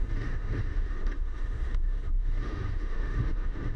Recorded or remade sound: remade